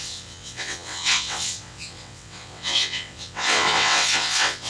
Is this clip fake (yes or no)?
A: yes